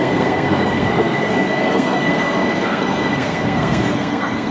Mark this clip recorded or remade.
remade